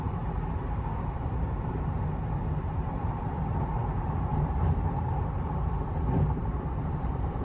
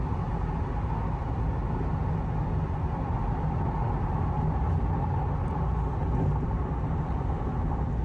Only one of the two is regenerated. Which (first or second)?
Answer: first